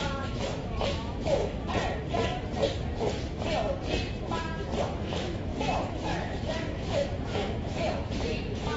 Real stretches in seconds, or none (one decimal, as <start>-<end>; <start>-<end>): 1.4-4.8